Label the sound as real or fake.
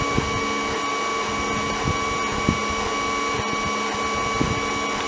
real